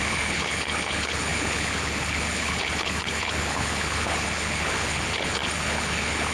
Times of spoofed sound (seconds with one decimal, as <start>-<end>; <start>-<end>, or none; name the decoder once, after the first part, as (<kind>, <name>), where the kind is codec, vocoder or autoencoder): 0.0-6.3 (codec, HILCodec)